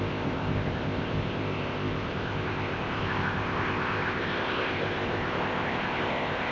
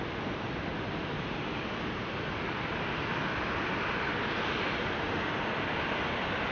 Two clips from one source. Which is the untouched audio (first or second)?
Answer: second